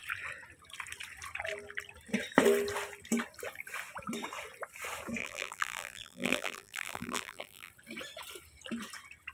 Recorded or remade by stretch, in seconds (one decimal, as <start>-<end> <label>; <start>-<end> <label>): 0.0-5.2 recorded; 5.2-7.7 remade; 7.7-9.3 recorded